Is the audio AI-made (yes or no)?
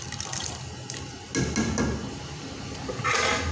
no